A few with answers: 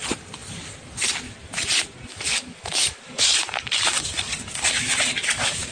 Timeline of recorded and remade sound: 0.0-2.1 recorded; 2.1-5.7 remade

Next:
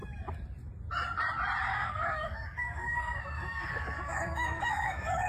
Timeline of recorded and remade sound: 0.0-1.7 recorded; 1.7-5.3 remade

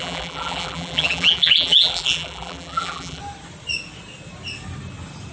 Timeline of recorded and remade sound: 0.0-3.2 remade; 3.2-5.3 recorded

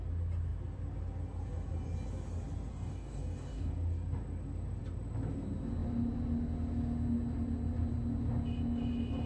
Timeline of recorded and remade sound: 0.0-2.7 recorded; 2.7-3.7 remade; 3.7-9.3 recorded

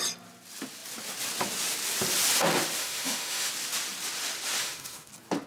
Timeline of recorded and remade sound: 0.0-2.8 recorded; 2.8-3.5 remade; 3.5-4.6 recorded; 4.6-5.1 remade; 5.1-5.5 recorded